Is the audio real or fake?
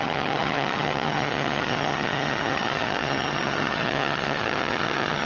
fake